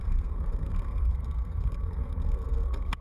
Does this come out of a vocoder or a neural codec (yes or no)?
yes